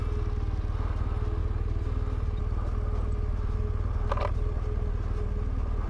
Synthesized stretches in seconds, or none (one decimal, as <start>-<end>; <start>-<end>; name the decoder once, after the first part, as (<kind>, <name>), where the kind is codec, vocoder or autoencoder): none